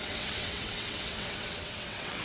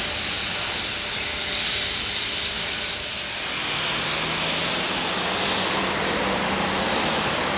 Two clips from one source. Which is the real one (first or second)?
second